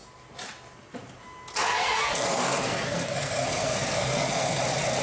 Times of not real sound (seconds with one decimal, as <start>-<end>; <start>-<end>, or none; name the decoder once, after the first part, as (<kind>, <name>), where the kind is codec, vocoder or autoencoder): 1.6-4.6 (codec, SNAC)